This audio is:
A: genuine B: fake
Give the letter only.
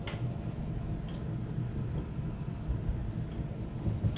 A